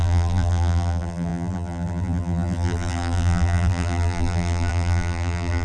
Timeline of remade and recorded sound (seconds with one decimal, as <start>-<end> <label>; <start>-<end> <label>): 0.0-5.6 remade